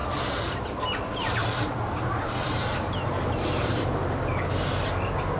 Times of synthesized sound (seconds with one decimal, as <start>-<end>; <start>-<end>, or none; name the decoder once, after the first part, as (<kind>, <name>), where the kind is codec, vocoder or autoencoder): 0.0-0.7 (vocoder, BigVGAN v2); 1.4-4.0